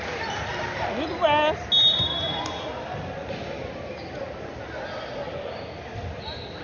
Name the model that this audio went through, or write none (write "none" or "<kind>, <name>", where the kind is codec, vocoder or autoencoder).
none